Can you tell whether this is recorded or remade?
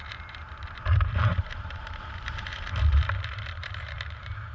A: remade